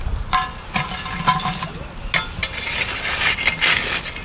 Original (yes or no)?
yes